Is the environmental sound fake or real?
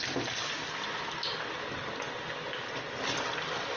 real